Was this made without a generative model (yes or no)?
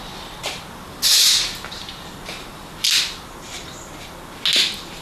yes